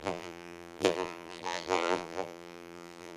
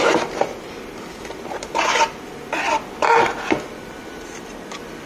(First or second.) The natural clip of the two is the second